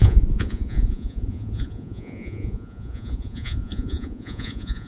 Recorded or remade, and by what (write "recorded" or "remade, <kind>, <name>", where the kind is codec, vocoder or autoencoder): remade, vocoder, Vocos